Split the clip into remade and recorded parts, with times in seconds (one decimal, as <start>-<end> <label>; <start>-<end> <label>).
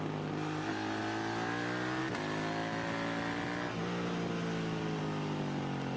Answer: 0.0-6.0 recorded